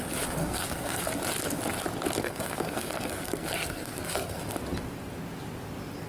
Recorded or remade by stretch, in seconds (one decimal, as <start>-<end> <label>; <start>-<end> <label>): 0.0-0.4 recorded; 0.4-1.0 remade; 1.0-2.2 recorded; 2.2-4.4 remade; 4.4-6.1 recorded